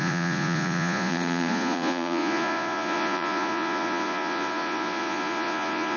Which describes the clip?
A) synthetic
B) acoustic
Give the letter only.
A